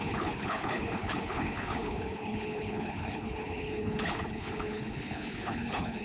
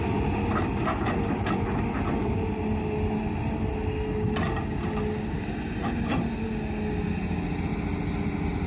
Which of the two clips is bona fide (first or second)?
second